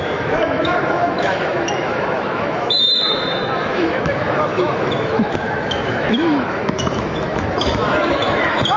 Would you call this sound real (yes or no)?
no